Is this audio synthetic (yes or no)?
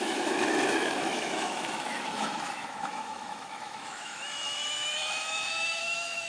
yes